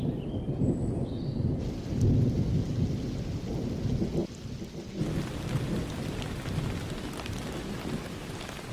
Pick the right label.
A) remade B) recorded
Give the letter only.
B